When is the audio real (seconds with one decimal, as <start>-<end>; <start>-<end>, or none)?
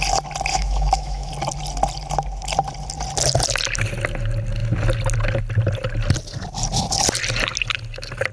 0.0-0.5; 1.3-8.3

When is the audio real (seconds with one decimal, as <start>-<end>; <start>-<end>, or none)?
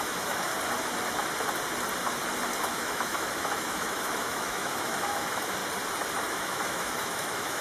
0.5-2.6; 5.6-6.3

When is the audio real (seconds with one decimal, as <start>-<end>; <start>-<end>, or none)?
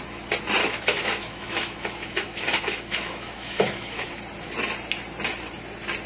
0.0-0.6; 4.2-6.1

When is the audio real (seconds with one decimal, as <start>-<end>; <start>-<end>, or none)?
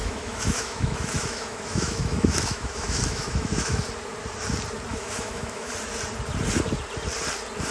3.8-4.9; 5.7-7.7